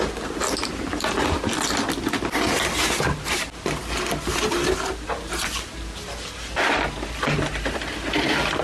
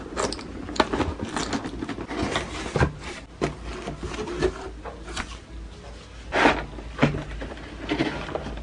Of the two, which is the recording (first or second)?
second